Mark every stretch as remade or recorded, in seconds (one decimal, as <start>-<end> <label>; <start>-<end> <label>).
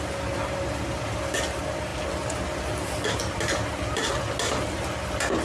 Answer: 0.0-5.4 recorded